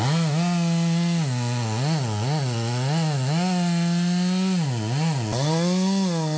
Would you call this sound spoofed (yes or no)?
no